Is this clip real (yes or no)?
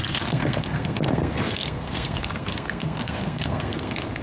no